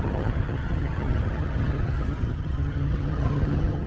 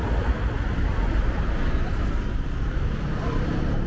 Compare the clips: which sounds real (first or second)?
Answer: second